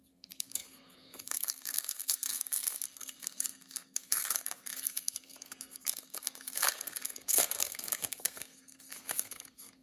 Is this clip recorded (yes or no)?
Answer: no